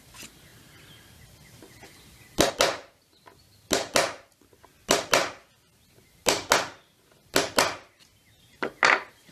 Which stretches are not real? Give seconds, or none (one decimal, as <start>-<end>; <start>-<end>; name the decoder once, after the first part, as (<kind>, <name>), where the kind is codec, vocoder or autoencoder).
none